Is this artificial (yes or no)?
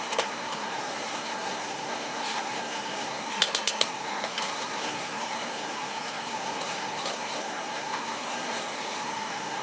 yes